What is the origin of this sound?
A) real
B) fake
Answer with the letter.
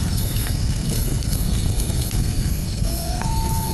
B